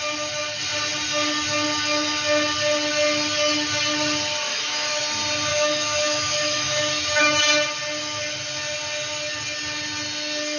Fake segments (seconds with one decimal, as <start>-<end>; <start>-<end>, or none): 4.5-5.0; 5.5-7.4